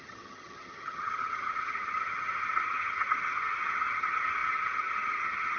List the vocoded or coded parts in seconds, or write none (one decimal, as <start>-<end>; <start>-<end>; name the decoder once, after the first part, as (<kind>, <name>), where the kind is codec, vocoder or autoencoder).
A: 0.0-5.6 (vocoder, HiFi-GAN)